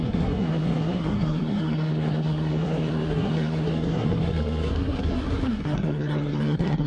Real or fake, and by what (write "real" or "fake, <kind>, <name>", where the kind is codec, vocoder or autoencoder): fake, codec, SNAC